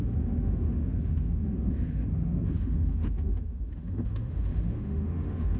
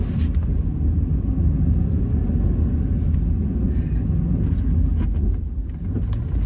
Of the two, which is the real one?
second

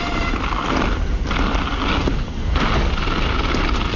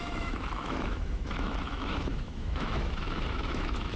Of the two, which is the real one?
first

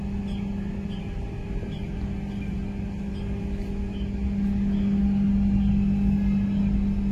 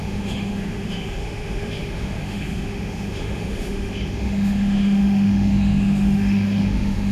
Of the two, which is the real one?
first